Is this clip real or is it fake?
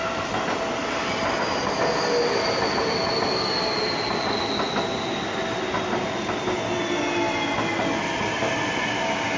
real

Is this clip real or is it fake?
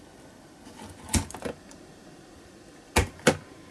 real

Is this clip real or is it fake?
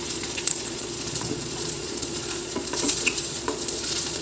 fake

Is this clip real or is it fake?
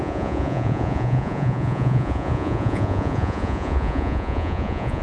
fake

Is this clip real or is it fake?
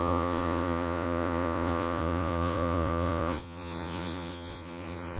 fake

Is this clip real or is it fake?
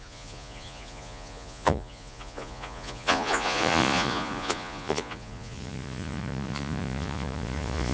fake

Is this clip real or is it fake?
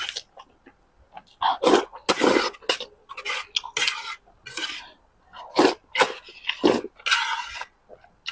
real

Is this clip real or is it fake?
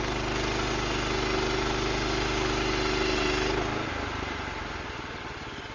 real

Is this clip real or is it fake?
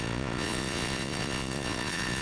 fake